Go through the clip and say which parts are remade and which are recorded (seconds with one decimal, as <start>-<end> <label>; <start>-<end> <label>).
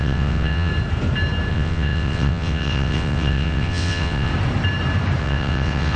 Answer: 0.0-0.7 remade; 0.7-1.5 recorded; 1.5-4.3 remade; 4.3-5.2 recorded; 5.2-6.0 remade